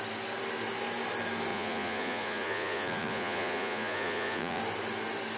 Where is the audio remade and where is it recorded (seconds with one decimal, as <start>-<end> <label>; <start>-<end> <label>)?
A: 0.0-1.5 recorded; 1.5-4.6 remade; 4.6-5.4 recorded